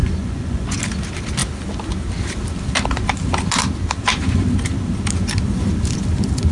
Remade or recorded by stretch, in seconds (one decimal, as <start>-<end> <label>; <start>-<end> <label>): 0.0-0.8 remade; 0.8-6.5 recorded

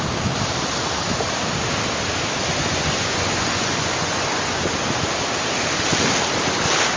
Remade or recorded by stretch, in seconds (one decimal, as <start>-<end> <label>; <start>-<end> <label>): 0.0-2.5 recorded; 2.5-4.6 remade; 4.6-7.0 recorded

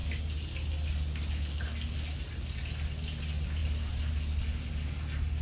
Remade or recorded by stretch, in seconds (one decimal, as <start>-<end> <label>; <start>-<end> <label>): 0.0-5.4 recorded